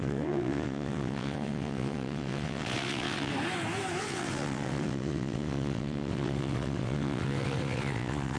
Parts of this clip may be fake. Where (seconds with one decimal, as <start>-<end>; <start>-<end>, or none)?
0.0-3.3; 4.0-8.4